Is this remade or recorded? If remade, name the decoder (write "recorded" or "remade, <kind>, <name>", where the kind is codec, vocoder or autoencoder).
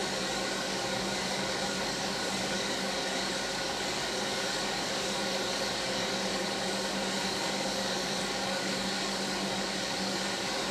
remade, codec, DAC